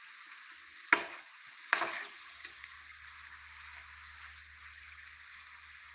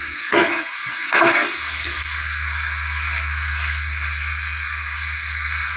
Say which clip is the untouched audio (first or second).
first